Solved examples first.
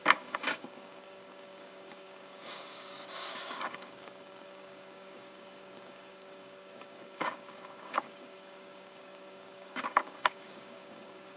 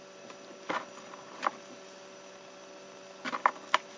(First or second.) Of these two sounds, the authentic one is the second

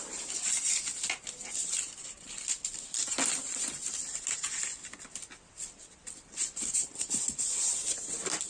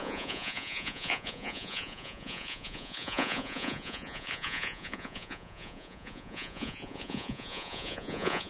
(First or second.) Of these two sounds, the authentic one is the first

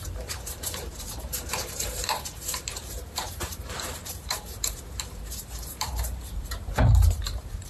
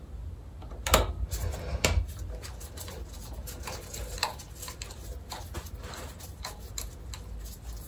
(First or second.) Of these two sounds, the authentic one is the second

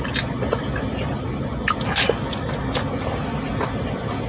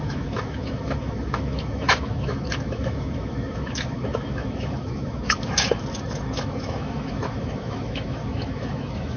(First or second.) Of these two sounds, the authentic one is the first